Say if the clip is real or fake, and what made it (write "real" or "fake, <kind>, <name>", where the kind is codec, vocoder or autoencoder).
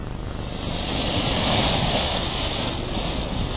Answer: real